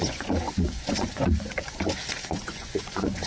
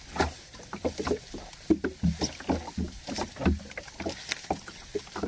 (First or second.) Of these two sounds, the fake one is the first